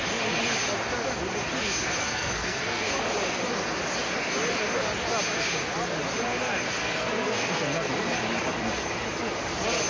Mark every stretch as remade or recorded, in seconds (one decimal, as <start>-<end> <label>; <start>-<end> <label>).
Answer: 0.0-2.0 recorded; 2.0-2.9 remade; 2.9-6.8 recorded; 6.8-7.9 remade; 7.9-9.9 recorded